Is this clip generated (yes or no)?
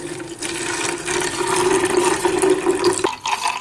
no